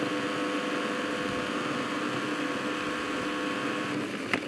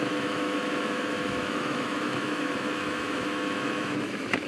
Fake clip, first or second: second